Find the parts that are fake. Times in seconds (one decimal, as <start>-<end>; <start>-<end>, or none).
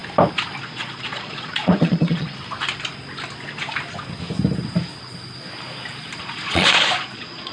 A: 0.6-2.4; 6.2-7.5